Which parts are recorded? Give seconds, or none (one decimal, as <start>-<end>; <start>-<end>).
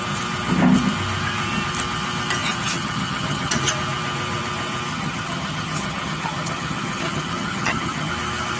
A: 0.0-2.4; 3.6-4.9; 8.1-8.6